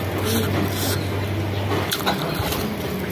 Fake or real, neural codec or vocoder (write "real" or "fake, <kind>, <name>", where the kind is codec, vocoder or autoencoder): real